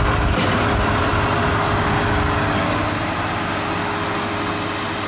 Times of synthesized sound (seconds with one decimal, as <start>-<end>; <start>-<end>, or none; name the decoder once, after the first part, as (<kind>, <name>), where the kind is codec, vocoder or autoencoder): none